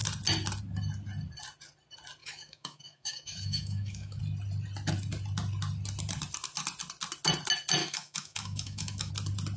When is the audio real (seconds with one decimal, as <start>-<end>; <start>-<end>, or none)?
0.0-2.2; 4.2-7.8; 9.1-9.6